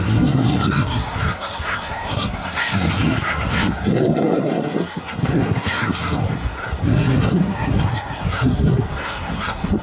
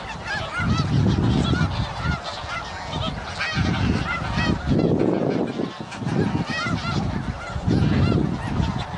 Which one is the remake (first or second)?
first